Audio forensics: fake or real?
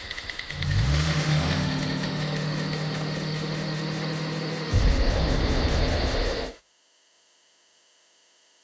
fake